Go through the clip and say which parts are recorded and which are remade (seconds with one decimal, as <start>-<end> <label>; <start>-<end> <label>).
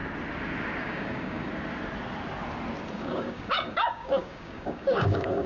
0.0-0.8 recorded; 0.8-1.5 remade; 1.5-2.9 recorded; 2.9-5.5 remade